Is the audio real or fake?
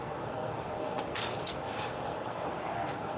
fake